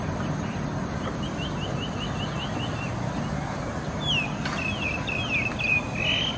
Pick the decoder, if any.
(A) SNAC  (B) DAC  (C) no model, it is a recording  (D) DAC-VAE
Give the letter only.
C